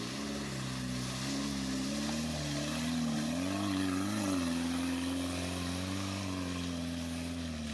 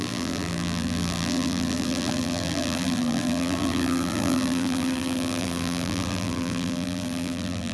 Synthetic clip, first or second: second